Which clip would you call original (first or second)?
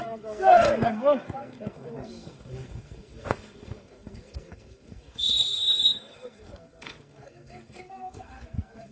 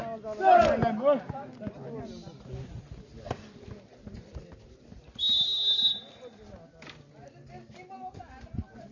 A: second